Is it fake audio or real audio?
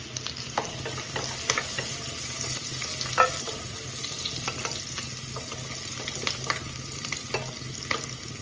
real